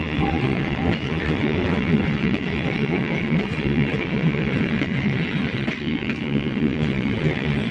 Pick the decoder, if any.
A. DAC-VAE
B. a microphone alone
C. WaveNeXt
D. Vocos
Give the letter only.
C